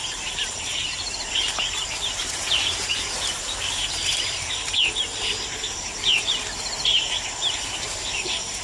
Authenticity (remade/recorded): remade